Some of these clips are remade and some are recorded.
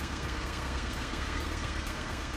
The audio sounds remade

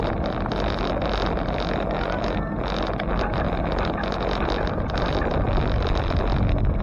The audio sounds recorded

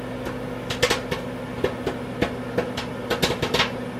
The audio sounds recorded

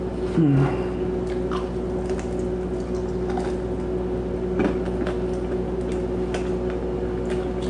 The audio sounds recorded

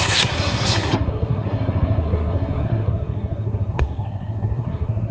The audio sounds remade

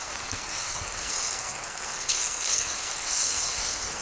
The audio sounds remade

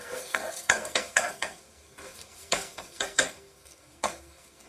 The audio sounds remade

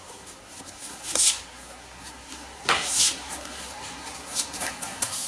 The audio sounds remade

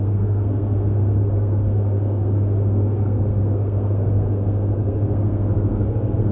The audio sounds remade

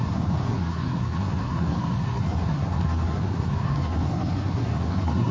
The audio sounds remade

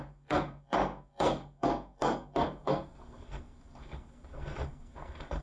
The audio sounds remade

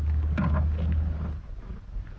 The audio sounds recorded